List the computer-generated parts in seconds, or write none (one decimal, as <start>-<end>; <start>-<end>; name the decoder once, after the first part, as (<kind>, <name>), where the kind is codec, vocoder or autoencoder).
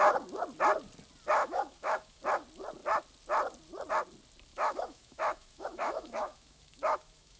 1.4-2.2 (autoencoder, DAC-VAE); 4.5-7.4